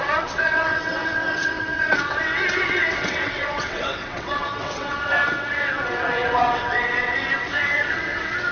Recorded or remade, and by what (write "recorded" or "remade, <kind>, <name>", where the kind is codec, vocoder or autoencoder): remade, vocoder, WaveNeXt